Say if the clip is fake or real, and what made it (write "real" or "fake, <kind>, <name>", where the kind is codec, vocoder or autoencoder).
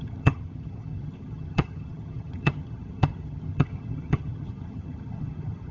fake, vocoder, HiFi-GAN